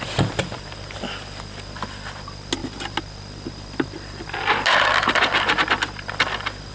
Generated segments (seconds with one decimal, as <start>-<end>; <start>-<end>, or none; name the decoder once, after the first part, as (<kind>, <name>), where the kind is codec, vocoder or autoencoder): none